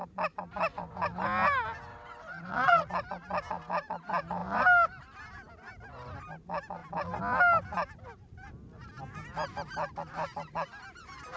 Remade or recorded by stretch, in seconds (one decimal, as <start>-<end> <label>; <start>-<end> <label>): 0.0-1.9 recorded; 1.9-2.9 remade; 2.9-11.4 recorded